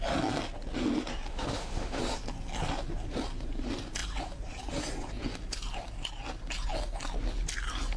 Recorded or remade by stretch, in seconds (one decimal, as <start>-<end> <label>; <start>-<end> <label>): 0.0-1.3 recorded; 1.3-2.0 remade; 2.0-8.0 recorded